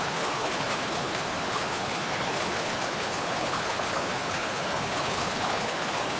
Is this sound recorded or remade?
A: remade